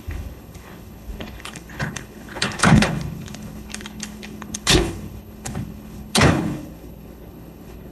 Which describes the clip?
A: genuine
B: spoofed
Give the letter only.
B